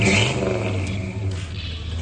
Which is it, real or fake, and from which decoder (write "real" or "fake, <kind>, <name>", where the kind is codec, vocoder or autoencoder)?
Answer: real